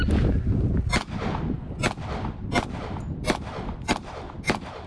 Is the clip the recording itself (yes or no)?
yes